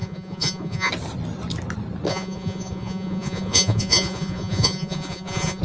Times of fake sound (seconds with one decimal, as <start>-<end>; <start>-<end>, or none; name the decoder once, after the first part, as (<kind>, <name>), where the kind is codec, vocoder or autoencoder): 0.0-0.9 (vocoder, Vocos); 2.1-5.6